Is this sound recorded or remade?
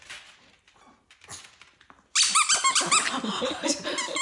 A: recorded